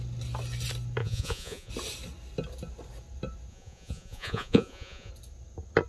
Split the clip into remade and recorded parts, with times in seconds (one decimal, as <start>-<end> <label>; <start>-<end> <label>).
0.0-1.0 recorded; 1.0-1.7 remade; 1.7-3.5 recorded; 3.5-5.1 remade; 5.1-5.9 recorded